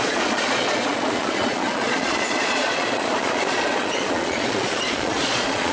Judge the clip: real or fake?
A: fake